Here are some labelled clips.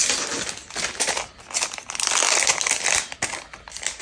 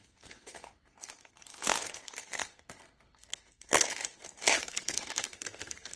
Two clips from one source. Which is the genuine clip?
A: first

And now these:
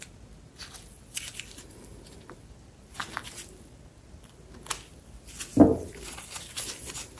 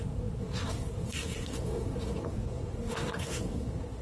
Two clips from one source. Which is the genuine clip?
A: first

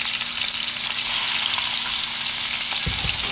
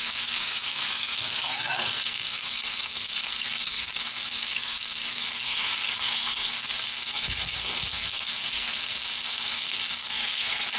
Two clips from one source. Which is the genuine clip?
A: first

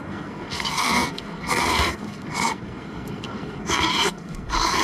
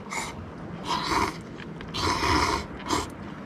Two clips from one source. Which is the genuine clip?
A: second